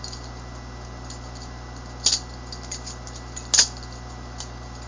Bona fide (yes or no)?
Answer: yes